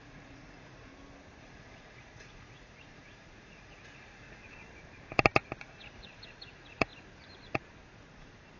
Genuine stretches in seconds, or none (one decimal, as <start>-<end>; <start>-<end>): 0.9-1.4; 4.4-5.6; 6.9-7.9